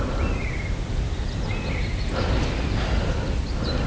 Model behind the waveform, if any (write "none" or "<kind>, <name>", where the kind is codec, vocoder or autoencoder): none